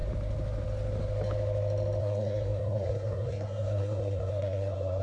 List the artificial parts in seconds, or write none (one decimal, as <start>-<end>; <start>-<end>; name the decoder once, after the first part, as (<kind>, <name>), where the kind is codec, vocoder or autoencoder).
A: 2.0-5.0 (codec, SNAC)